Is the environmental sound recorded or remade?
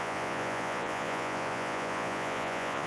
remade